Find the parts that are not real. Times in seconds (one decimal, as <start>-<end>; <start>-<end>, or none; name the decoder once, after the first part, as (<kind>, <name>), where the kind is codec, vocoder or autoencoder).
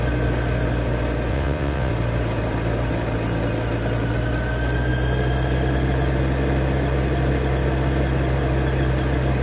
1.3-1.9 (vocoder, WaveNeXt)